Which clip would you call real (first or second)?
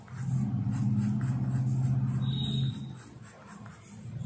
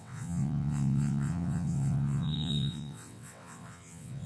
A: first